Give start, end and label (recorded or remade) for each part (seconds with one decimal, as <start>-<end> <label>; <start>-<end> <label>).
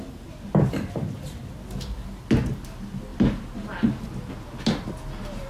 0.0-5.5 recorded